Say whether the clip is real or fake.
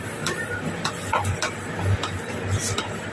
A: real